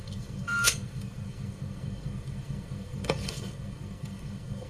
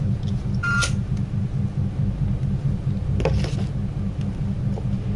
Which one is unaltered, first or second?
second